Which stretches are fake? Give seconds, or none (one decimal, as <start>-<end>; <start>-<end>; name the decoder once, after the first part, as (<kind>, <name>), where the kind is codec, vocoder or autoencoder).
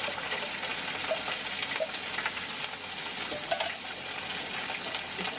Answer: none